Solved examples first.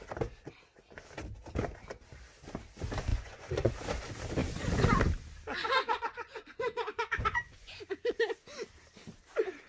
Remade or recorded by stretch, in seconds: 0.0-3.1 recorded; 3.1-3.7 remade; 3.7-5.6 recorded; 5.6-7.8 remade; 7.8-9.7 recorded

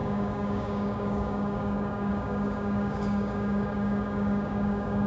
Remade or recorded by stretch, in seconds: 0.0-5.1 remade

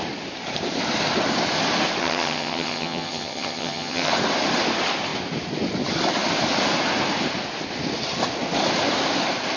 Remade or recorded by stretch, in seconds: 0.0-2.0 recorded; 2.0-4.1 remade; 4.1-9.6 recorded

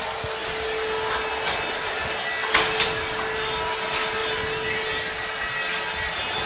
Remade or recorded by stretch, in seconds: 0.0-2.4 recorded; 2.4-2.9 remade; 2.9-4.2 recorded; 4.2-4.9 remade; 4.9-6.5 recorded

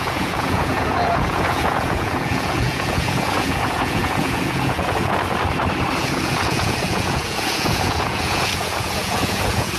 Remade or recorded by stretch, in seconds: 0.0-5.2 remade; 5.2-6.0 recorded; 6.0-9.8 remade

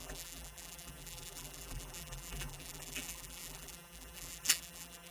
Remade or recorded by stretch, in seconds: 0.0-5.1 remade

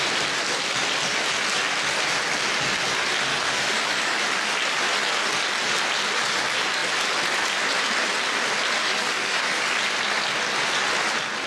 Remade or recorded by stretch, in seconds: 0.0-3.3 recorded; 3.3-4.2 remade; 4.2-8.8 recorded; 8.8-9.7 remade; 9.7-11.5 recorded